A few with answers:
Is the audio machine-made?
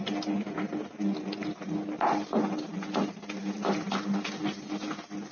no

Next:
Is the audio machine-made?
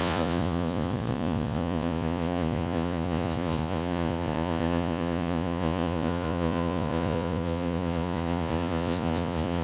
yes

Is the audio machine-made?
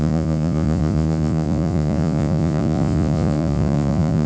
yes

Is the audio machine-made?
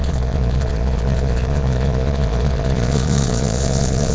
yes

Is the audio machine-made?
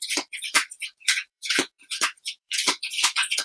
yes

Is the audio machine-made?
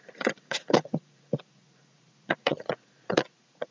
yes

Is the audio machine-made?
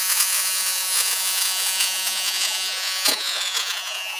yes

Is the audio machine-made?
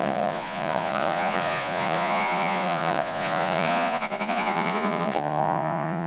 yes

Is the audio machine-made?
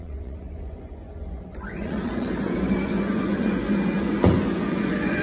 yes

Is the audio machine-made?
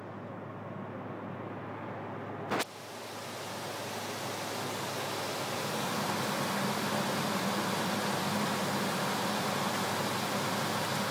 no